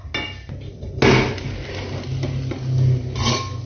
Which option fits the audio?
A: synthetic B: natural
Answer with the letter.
B